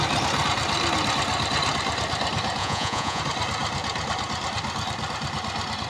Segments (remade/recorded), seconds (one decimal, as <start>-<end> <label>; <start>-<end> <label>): 0.0-2.6 recorded; 2.6-3.2 remade; 3.2-5.9 recorded